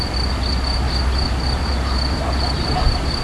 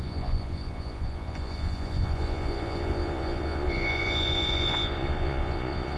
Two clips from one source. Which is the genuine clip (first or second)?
first